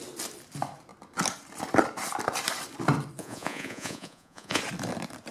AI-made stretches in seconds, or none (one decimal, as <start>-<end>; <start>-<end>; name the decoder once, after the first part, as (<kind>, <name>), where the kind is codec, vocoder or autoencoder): 3.2-4.6 (vocoder, Vocos)